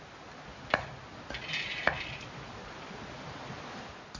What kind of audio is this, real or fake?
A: real